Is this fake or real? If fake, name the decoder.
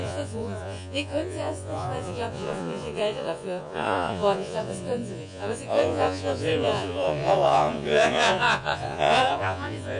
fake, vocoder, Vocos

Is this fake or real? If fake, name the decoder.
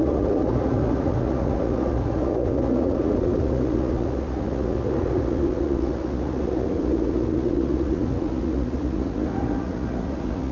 fake, vocoder, Vocos